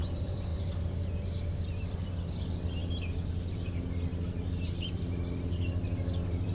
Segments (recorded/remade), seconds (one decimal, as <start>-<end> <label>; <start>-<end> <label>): 0.0-6.5 recorded